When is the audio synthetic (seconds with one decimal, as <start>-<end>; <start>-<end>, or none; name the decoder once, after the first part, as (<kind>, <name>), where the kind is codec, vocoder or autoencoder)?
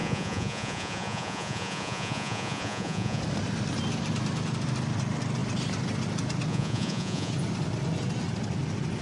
0.0-3.2 (vocoder, Vocos); 6.5-7.3